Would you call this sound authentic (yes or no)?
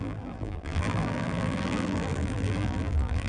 no